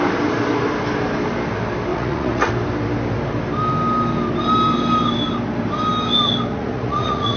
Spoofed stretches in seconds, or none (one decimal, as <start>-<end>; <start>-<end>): 1.9-2.5; 6.5-7.4